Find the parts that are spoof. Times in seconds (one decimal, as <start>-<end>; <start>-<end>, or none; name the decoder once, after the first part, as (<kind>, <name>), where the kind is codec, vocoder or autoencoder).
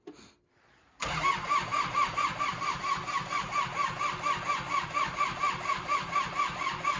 1.7-2.8 (vocoder, BigVGAN v2)